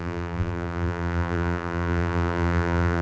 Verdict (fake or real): fake